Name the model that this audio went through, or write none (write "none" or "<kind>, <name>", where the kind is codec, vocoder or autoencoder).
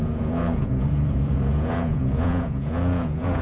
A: vocoder, Vocos